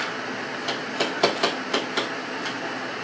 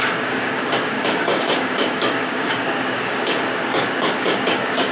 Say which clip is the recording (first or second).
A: first